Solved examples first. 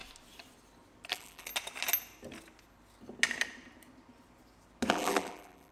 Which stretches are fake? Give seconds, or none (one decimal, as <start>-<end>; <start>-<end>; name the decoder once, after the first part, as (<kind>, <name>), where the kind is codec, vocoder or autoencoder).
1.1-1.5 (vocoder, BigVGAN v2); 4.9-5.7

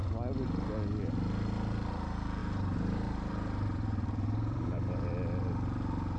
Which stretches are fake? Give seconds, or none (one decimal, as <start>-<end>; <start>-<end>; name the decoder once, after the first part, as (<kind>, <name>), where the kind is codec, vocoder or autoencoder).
2.4-5.1 (vocoder, BigVGAN v2)

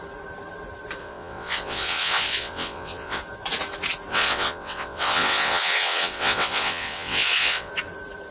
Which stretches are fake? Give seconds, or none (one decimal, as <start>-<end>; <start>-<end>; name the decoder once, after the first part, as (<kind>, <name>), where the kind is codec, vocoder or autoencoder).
1.0-3.2 (vocoder, WaveNeXt); 4.1-7.7

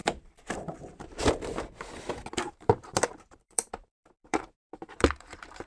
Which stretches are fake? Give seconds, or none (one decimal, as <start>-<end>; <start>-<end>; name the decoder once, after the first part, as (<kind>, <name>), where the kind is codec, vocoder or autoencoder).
0.0-1.3 (vocoder, BigVGAN v2); 2.3-5.7

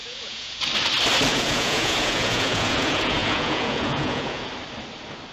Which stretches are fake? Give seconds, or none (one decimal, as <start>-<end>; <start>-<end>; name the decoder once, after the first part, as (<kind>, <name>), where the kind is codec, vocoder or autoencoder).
0.0-0.6 (vocoder, Vocos); 1.3-4.5

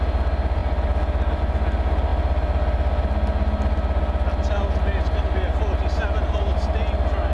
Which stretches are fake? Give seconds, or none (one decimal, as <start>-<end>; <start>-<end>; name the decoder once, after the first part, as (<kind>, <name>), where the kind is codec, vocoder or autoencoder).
none